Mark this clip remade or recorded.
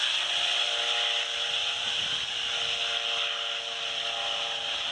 recorded